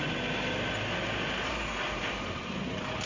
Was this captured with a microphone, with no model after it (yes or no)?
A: yes